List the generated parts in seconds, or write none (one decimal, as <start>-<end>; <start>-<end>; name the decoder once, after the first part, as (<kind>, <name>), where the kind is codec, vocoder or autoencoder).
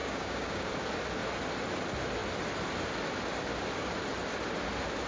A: 0.0-0.7 (codec, DAC)